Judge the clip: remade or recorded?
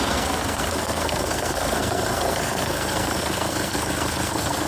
remade